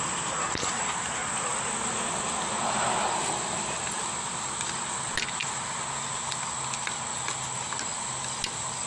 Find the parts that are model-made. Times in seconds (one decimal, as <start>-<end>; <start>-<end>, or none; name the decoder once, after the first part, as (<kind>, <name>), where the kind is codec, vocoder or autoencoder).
none